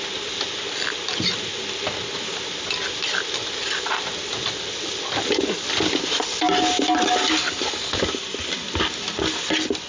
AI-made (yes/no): no